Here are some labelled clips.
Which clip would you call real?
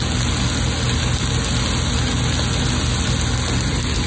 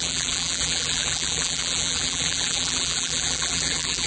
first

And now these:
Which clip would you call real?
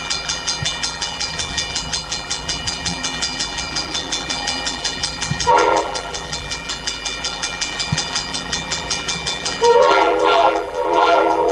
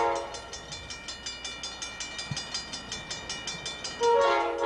second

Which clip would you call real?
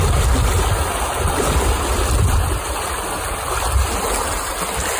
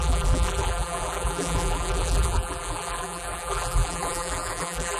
first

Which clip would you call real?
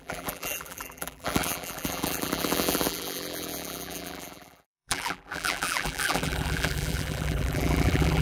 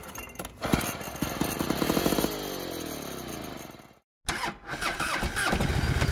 second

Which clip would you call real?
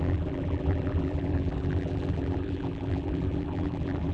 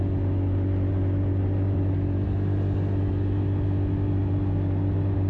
second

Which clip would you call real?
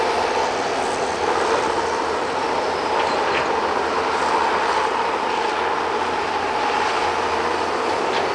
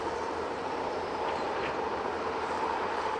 first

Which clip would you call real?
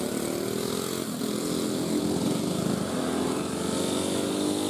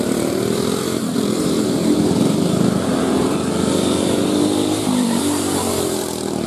first